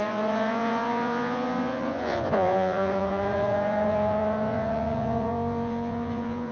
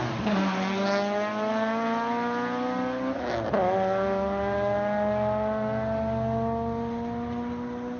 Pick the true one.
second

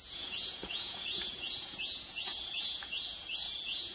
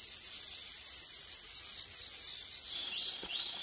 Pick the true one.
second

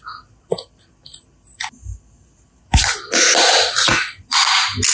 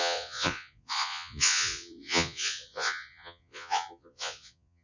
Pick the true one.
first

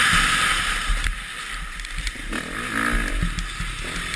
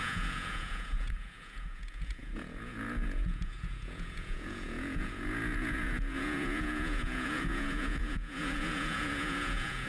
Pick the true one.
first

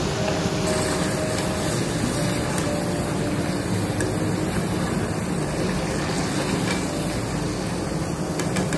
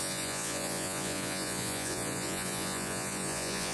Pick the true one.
first